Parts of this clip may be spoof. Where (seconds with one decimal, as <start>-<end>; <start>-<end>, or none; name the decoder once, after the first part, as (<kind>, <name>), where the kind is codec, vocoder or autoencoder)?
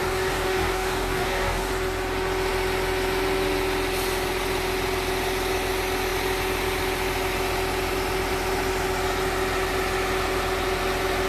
0.0-1.7 (codec, DAC)